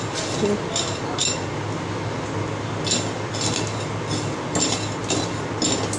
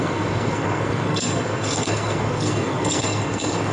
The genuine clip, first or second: first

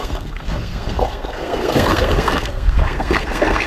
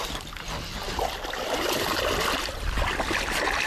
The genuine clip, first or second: second